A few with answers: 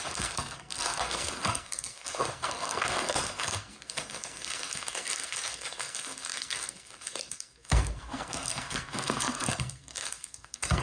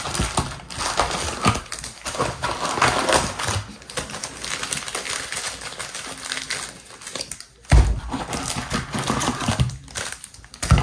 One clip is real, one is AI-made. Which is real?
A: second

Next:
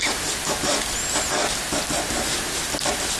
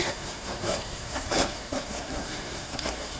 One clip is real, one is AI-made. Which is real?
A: first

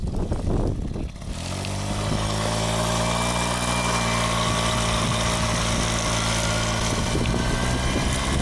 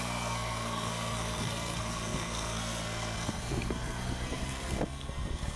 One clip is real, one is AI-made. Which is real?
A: first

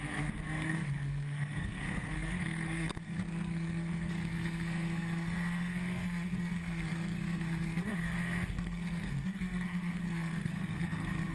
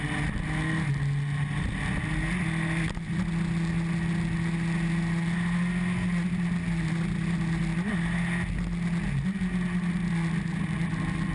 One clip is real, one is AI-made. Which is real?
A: second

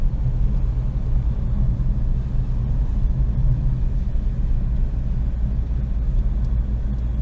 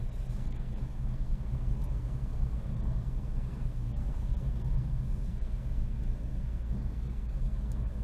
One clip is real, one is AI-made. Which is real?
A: first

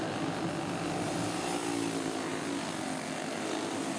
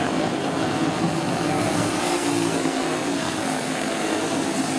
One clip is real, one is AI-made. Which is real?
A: first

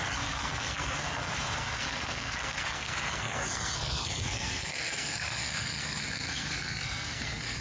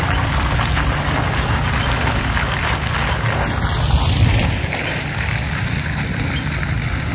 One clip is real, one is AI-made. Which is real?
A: second